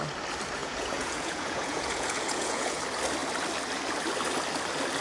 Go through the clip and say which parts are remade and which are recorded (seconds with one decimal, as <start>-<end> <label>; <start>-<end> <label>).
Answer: 0.0-0.6 recorded; 0.6-2.8 remade; 2.8-5.0 recorded